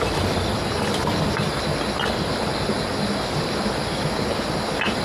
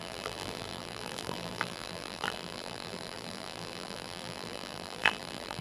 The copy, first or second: second